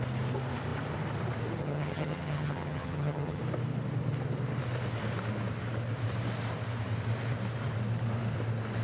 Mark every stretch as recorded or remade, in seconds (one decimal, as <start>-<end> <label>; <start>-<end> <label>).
0.0-1.6 recorded; 1.6-3.4 remade; 3.4-8.8 recorded